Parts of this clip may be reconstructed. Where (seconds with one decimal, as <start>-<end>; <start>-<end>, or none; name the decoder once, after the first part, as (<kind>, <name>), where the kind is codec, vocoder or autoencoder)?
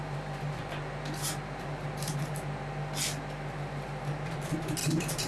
0.0-0.6 (vocoder, BigVGAN v2); 4.8-5.3